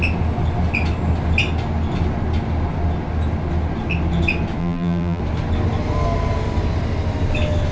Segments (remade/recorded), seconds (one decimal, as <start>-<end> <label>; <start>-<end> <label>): 0.0-4.6 recorded; 4.6-5.2 remade; 5.2-7.7 recorded